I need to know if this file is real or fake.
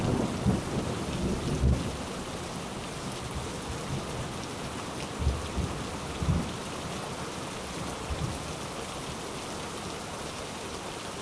real